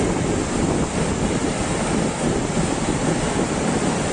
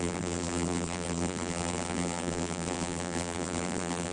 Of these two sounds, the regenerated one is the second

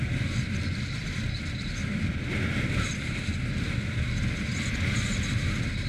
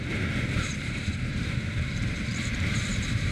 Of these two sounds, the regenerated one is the second